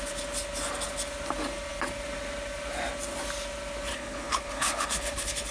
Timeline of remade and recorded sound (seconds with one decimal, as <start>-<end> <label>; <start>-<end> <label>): 0.0-3.9 recorded; 3.9-5.5 remade